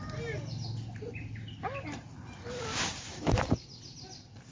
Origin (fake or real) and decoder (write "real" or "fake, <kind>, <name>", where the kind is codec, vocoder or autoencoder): real